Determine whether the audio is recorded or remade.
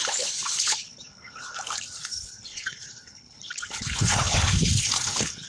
remade